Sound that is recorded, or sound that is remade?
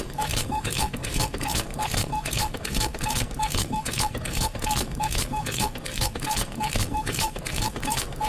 remade